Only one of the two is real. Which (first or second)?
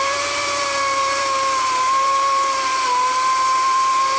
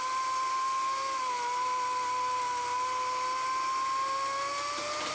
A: second